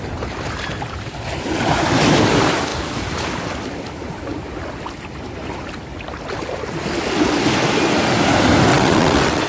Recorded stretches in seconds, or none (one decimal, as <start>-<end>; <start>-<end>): 0.0-8.7